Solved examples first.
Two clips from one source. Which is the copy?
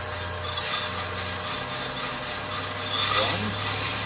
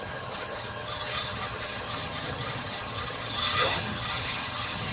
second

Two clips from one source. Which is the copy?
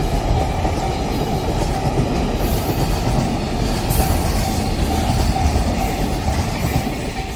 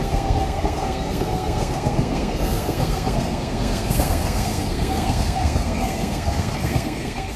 second